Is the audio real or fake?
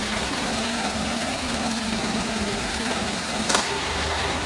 fake